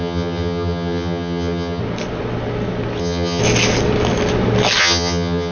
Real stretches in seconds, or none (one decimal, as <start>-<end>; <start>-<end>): 1.8-3.0; 3.4-4.8